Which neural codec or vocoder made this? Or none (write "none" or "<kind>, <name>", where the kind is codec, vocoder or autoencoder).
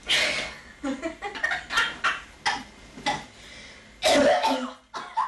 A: none